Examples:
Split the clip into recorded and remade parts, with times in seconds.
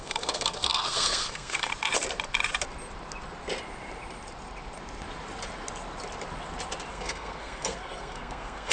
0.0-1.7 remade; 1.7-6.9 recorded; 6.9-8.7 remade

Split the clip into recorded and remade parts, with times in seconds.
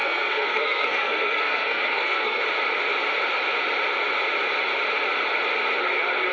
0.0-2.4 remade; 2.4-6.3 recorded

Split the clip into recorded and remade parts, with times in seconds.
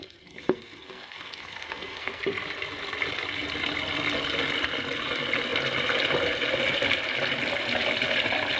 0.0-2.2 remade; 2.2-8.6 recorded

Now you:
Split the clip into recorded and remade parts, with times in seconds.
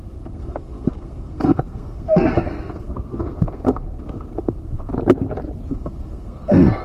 0.0-4.9 remade; 4.9-5.7 recorded; 5.7-6.8 remade